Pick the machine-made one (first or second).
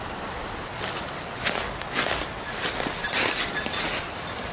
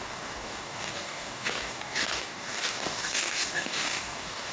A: second